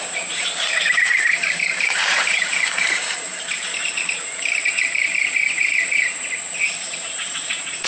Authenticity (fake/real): fake